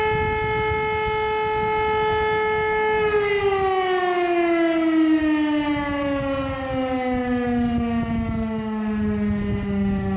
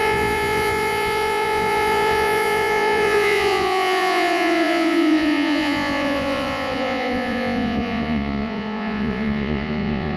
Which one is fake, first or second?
second